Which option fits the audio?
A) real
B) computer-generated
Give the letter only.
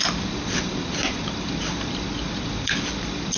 A